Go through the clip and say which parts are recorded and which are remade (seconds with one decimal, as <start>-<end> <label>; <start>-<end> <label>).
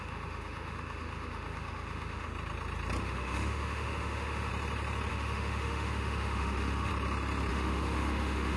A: 0.0-2.3 remade; 2.3-3.0 recorded; 3.0-4.5 remade; 4.5-5.1 recorded; 5.1-6.9 remade; 6.9-7.5 recorded; 7.5-8.6 remade